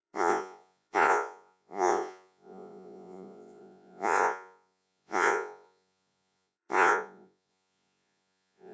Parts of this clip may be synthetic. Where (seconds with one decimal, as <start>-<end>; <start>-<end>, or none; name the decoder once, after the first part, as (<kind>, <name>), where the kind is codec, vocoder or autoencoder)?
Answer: 0.0-8.7 (vocoder, Vocos)